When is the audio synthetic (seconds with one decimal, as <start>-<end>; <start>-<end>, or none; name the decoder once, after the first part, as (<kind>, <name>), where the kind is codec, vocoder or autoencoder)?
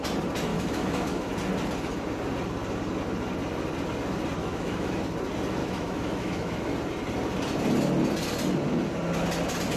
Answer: 0.5-1.3 (autoencoder, DAC-VAE); 4.4-5.0; 5.6-6.6